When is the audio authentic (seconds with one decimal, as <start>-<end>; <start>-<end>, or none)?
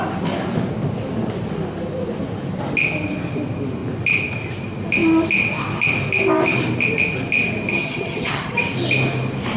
0.0-7.7; 8.6-9.6